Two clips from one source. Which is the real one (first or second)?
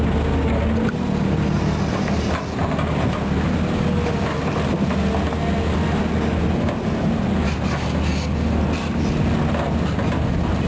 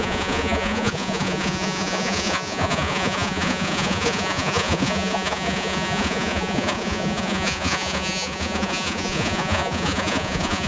first